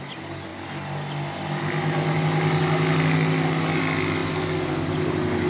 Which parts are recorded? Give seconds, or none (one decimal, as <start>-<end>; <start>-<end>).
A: 0.0-5.5